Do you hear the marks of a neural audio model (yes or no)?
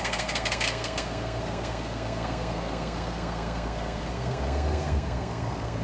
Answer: yes